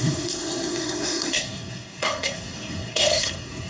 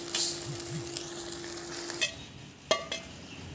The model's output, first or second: first